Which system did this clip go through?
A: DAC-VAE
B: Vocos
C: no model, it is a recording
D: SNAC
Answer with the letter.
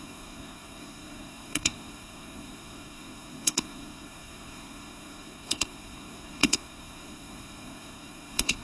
D